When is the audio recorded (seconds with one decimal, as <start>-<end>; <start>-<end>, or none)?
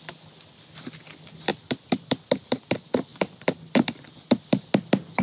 0.0-3.1; 4.1-5.2